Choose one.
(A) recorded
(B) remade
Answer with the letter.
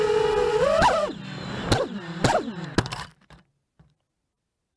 A